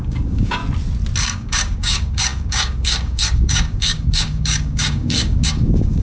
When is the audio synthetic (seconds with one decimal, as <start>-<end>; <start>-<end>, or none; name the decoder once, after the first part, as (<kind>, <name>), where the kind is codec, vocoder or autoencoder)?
0.0-0.6 (codec, DAC); 1.2-6.0

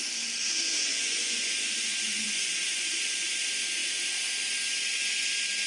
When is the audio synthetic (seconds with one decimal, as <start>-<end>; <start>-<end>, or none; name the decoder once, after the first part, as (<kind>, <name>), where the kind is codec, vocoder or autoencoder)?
0.9-3.0 (vocoder, Vocos)

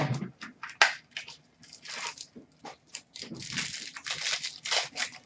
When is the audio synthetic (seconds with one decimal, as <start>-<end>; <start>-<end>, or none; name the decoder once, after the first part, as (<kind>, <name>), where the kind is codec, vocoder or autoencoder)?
none

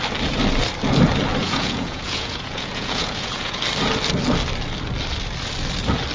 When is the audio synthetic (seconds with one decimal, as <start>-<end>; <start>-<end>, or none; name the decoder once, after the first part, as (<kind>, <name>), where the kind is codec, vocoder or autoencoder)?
1.4-3.6 (vocoder, Vocos)

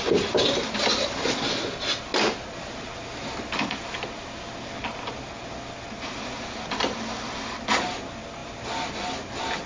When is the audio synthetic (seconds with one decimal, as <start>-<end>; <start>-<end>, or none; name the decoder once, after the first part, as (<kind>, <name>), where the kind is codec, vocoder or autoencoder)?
none